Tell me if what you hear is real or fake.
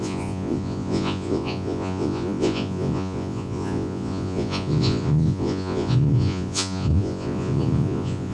fake